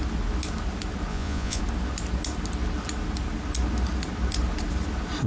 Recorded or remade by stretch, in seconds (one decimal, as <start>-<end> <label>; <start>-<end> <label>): 0.0-1.1 recorded; 1.1-1.6 remade; 1.6-5.3 recorded